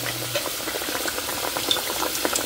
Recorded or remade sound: remade